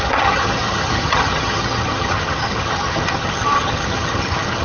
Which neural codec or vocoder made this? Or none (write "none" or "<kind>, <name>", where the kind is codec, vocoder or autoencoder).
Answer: vocoder, HiFi-GAN